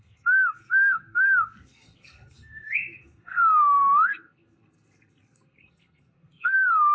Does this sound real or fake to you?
fake